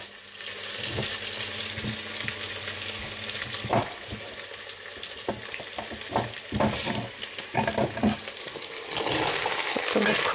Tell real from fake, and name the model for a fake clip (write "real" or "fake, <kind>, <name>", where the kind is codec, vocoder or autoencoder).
real